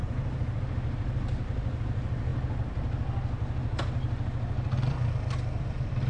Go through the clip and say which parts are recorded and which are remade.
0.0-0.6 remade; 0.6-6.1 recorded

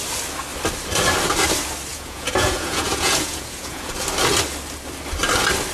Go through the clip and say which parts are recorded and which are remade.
0.0-1.9 recorded; 1.9-3.9 remade; 3.9-5.7 recorded

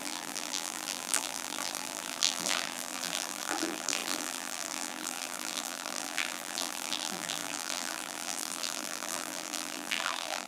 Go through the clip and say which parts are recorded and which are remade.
0.0-10.5 remade

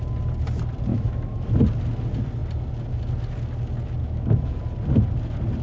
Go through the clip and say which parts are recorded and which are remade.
0.0-0.9 recorded; 0.9-1.5 remade; 1.5-4.0 recorded; 4.0-4.6 remade; 4.6-5.6 recorded

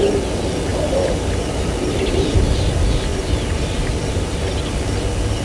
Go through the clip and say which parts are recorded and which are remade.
0.0-0.7 recorded; 0.7-2.7 remade; 2.7-3.1 recorded; 3.1-4.7 remade; 4.7-5.4 recorded

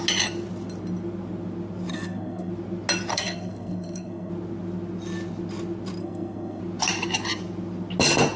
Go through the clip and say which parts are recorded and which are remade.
0.0-1.9 recorded; 1.9-2.5 remade; 2.5-3.1 recorded; 3.1-4.3 remade; 4.3-6.0 recorded; 6.0-6.6 remade; 6.6-8.4 recorded

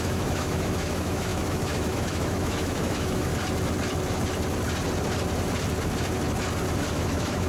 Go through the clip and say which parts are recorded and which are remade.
0.0-3.3 remade; 3.3-6.9 recorded; 6.9-7.5 remade